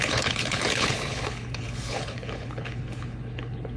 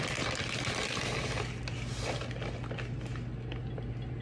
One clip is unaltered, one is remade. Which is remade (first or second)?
first